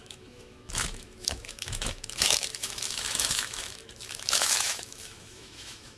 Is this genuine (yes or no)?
no